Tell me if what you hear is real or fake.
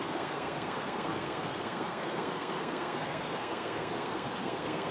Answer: fake